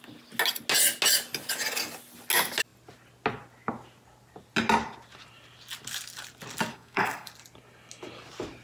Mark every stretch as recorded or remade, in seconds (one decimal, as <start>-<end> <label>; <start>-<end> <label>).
0.0-6.7 recorded; 6.7-7.3 remade; 7.3-8.6 recorded